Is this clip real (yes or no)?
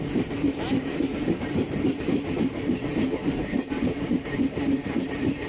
no